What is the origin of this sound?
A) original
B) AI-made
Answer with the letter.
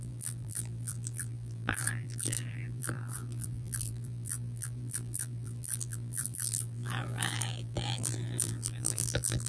B